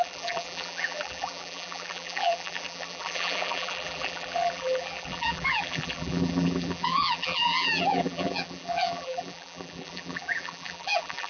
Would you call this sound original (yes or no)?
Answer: no